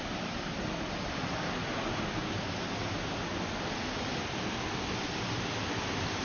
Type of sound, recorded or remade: recorded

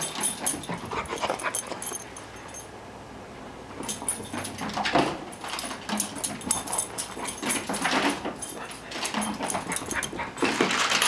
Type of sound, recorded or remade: recorded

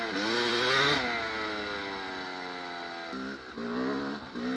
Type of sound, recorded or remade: recorded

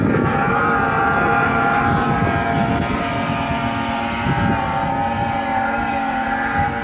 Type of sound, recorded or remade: recorded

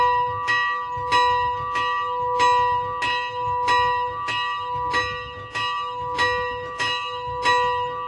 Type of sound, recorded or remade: recorded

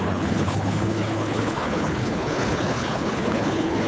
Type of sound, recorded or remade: remade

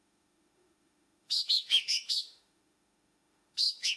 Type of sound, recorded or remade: remade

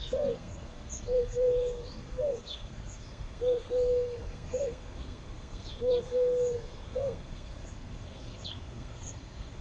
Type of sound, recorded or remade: remade